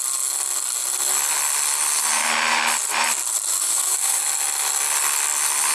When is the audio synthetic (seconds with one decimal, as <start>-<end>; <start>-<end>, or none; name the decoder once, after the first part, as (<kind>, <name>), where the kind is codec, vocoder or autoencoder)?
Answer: 3.5-4.2 (codec, DAC)